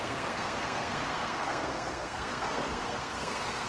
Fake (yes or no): yes